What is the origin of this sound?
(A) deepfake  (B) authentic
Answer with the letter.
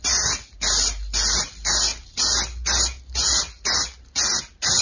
B